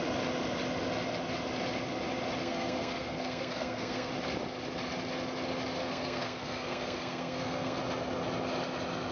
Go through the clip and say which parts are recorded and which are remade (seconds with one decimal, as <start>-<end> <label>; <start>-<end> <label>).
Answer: 0.0-2.4 recorded; 2.4-4.1 remade; 4.1-5.8 recorded; 5.8-7.8 remade; 7.8-9.1 recorded